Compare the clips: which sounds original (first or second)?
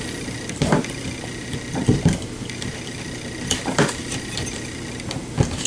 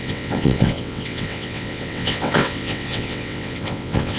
first